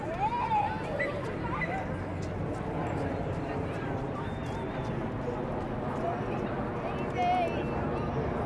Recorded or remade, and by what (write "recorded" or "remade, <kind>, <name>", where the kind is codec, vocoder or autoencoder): recorded